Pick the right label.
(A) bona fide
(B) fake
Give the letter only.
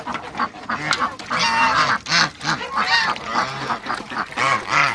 A